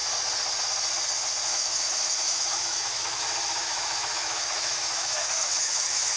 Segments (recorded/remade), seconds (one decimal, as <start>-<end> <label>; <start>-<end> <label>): 0.0-1.5 recorded; 1.5-3.2 remade; 3.2-3.6 recorded; 3.6-6.2 remade